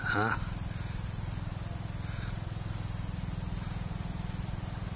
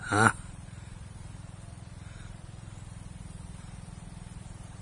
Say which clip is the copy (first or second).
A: second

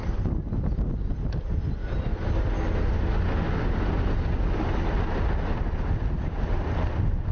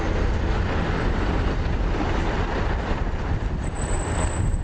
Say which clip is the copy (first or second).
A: second